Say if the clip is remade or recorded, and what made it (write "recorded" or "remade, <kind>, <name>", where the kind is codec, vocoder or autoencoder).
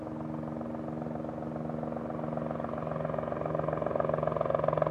recorded